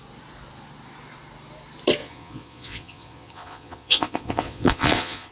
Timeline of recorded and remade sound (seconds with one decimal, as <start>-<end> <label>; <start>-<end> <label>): 0.0-2.0 recorded; 2.0-5.3 remade